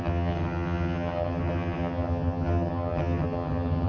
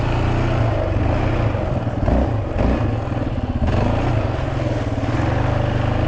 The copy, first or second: first